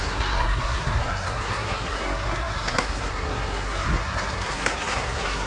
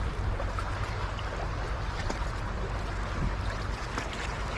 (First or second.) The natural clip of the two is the second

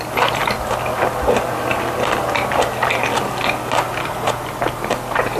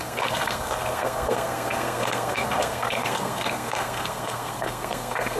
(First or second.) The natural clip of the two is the first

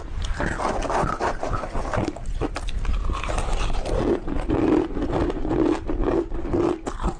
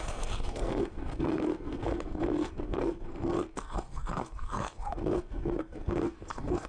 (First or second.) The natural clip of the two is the first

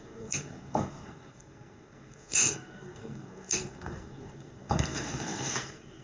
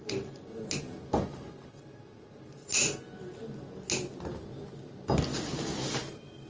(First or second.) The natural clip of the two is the second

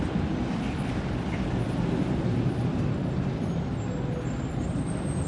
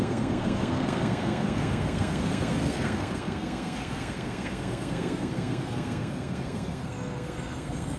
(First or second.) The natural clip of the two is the first